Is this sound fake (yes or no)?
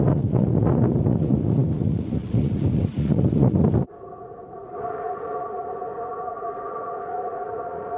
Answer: yes